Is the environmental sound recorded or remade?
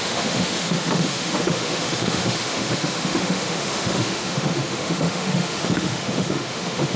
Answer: remade